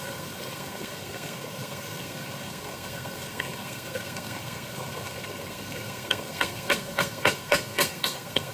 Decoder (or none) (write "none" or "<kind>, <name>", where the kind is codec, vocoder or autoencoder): codec, SNAC